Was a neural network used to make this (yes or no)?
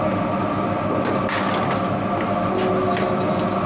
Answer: no